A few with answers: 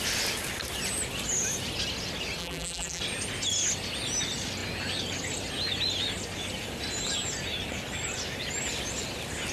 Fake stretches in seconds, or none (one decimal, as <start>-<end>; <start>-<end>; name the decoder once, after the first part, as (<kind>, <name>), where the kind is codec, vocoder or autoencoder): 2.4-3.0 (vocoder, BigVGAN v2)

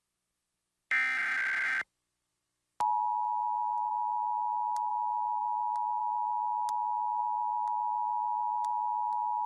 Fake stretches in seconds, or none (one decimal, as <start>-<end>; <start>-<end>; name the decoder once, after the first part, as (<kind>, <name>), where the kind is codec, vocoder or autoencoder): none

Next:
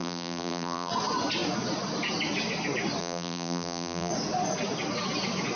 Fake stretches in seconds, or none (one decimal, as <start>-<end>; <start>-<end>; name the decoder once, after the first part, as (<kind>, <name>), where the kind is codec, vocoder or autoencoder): 0.0-0.9 (vocoder, BigVGAN v2); 3.0-4.1

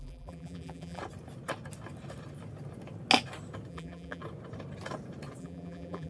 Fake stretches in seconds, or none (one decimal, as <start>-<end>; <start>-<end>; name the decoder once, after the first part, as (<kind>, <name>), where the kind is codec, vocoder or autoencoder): 0.0-1.0 (vocoder, BigVGAN v2); 3.7-4.2; 5.4-6.1